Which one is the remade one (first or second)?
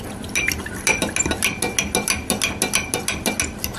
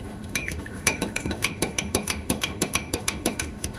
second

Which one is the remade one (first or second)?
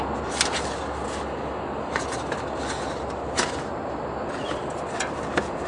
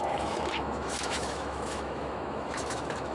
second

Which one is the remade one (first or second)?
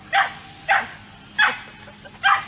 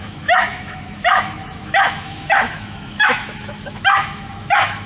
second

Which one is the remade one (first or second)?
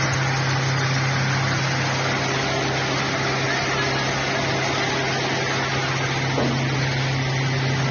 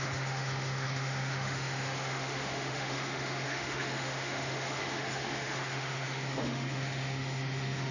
second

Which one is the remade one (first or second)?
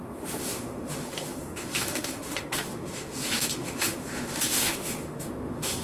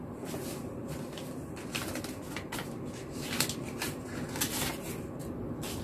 first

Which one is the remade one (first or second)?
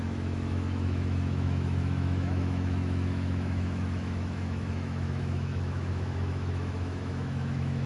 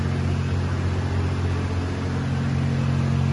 first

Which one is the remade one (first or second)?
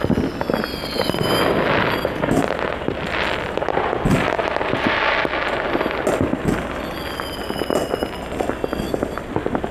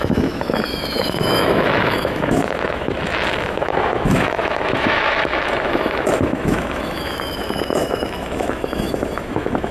second